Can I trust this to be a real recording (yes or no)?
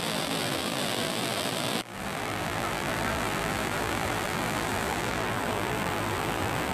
no